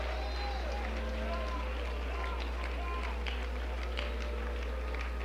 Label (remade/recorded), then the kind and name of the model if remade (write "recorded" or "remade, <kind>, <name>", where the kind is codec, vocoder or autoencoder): recorded